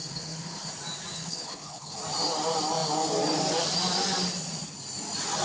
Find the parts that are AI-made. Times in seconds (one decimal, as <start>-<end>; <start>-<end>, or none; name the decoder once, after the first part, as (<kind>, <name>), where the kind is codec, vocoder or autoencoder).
0.0-0.7 (codec, HILCodec); 1.1-2.0